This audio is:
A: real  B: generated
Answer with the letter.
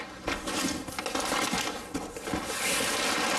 A